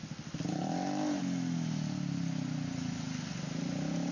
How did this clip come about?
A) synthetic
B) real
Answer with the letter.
B